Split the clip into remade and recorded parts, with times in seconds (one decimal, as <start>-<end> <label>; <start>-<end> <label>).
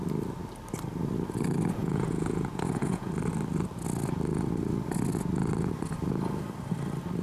0.0-1.8 recorded; 1.8-3.1 remade; 3.1-7.2 recorded